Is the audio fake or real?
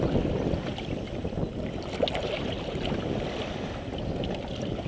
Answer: real